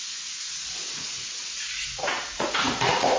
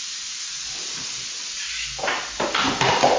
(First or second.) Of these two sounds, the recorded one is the second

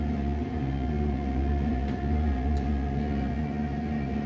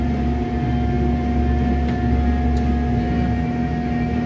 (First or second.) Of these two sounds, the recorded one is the second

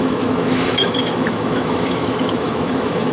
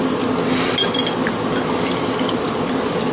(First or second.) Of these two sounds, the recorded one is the second